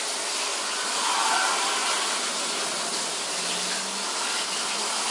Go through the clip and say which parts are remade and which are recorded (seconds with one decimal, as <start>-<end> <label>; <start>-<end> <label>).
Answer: 0.0-0.5 recorded; 0.5-1.0 remade; 1.0-5.1 recorded